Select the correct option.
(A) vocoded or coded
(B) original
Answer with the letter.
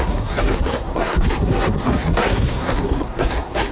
A